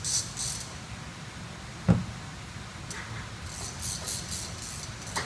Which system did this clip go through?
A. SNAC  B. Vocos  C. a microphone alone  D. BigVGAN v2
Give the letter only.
C